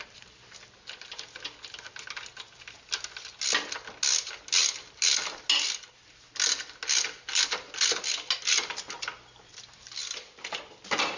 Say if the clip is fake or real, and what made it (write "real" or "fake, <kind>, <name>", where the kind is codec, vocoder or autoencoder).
real